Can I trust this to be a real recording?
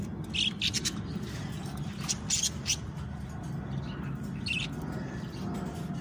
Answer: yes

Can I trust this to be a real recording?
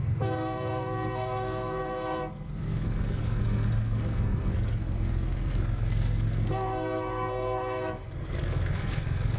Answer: no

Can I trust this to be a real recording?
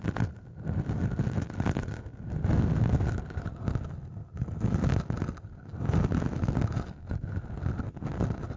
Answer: yes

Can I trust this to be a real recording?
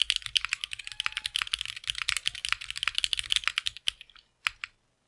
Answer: yes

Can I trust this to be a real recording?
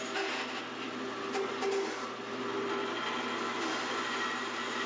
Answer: yes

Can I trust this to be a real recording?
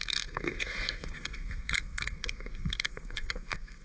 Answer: no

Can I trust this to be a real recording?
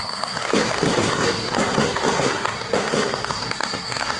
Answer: no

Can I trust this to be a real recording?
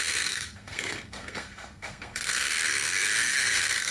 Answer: no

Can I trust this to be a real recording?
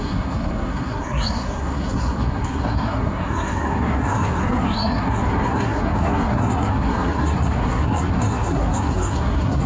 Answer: no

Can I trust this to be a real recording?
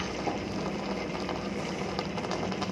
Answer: yes